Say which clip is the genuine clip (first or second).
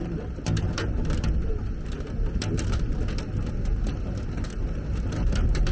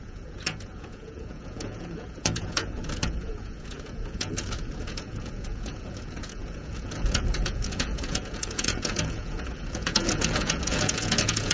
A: first